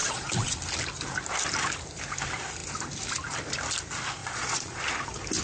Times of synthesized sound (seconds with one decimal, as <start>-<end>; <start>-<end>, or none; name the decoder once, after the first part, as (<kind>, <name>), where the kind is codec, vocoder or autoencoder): 0.0-0.6 (vocoder, Vocos); 4.2-4.8